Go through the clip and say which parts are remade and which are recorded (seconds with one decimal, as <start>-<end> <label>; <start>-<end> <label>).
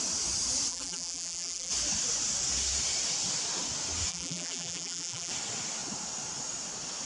0.0-0.7 recorded; 0.7-1.7 remade; 1.7-4.1 recorded; 4.1-5.3 remade; 5.3-7.1 recorded